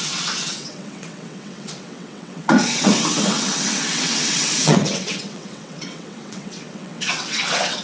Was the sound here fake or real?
fake